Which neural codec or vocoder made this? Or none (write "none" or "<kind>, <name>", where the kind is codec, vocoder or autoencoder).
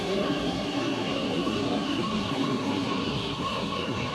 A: codec, SNAC